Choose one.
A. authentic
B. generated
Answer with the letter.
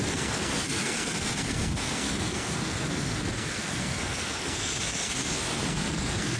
B